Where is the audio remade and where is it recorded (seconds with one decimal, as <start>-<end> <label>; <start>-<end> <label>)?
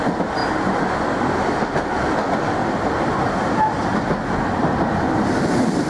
0.0-2.6 recorded; 2.6-5.9 remade